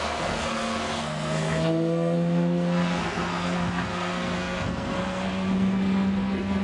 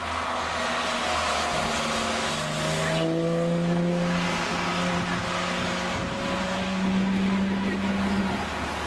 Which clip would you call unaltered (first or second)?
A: second